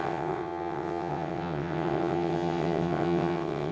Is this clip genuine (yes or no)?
no